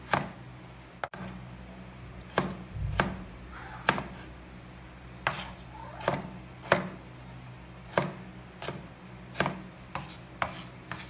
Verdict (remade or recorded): recorded